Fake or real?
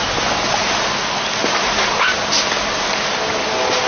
real